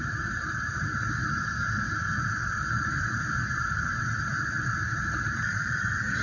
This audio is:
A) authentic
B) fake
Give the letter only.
A